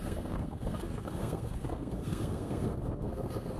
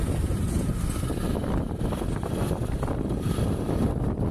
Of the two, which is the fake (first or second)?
first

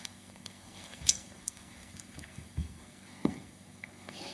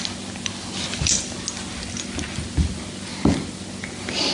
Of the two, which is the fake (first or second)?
first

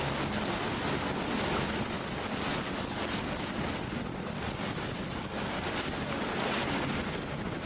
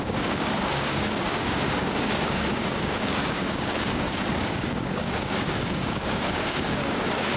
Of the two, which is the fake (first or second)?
second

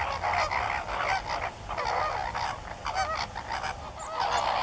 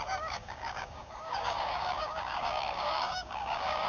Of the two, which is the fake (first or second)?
second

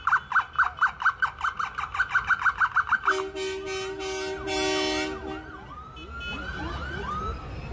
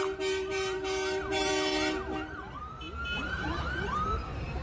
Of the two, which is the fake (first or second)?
second